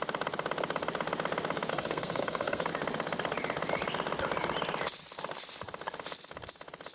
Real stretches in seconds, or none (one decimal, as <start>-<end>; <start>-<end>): 0.0-1.7; 2.7-6.9

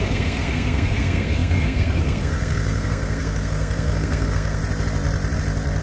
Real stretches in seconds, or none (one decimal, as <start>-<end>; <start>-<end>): 4.6-5.8

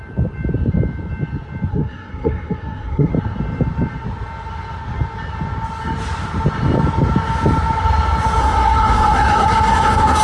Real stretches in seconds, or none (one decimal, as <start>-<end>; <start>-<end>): 0.0-1.7; 3.1-8.4

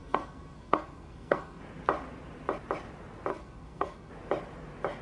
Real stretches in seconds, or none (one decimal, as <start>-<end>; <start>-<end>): 1.6-3.3; 4.1-5.0

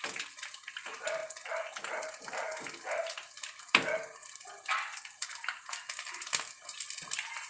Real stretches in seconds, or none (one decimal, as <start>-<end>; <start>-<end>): 0.0-7.5

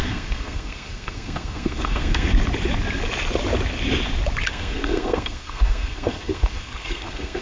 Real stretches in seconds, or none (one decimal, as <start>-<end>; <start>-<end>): 2.3-4.5

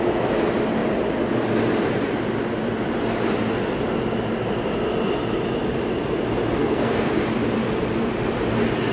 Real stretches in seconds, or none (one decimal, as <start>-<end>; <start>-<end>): 0.0-6.6; 7.1-8.9

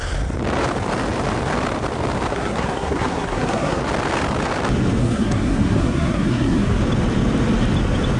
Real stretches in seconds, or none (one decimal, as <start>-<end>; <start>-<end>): 0.0-2.3; 3.8-5.0; 6.8-8.2